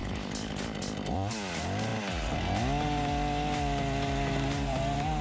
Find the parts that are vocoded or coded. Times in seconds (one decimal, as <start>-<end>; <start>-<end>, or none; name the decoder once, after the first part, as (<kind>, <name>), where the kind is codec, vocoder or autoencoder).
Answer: none